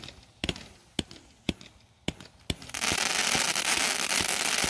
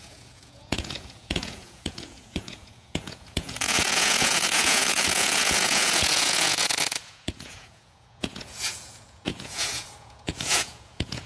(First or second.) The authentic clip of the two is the first